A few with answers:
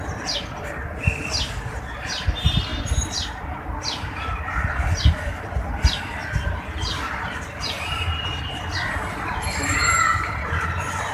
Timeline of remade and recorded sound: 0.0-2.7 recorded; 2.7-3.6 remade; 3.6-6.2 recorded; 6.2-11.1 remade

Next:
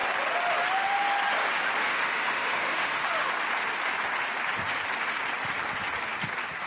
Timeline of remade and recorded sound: 0.0-1.8 recorded; 1.8-3.3 remade; 3.3-6.7 recorded

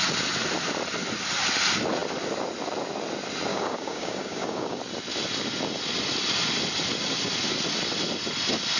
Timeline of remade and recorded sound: 0.0-3.5 recorded; 3.5-4.8 remade; 4.8-8.8 recorded

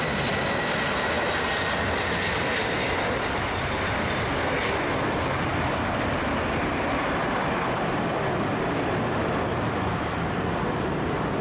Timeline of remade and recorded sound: 0.0-11.4 recorded

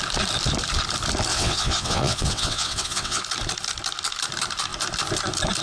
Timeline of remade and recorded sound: 0.0-1.3 recorded; 1.3-3.2 remade; 3.2-5.6 recorded